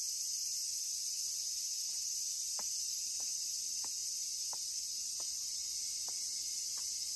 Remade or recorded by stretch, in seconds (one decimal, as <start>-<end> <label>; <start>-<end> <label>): 0.0-0.6 remade; 0.6-2.8 recorded; 2.8-6.5 remade; 6.5-7.2 recorded